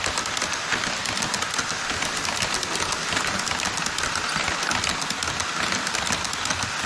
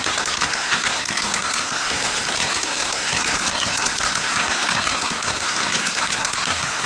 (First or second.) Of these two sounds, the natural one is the first